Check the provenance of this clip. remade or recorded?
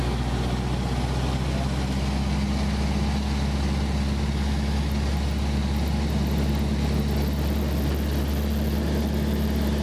recorded